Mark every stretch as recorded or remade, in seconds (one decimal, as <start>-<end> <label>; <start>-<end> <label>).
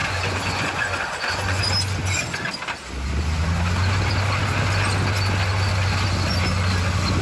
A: 0.0-1.6 remade; 1.6-2.0 recorded; 2.0-2.5 remade; 2.5-7.2 recorded